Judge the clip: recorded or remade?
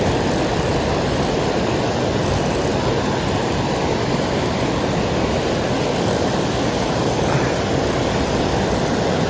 recorded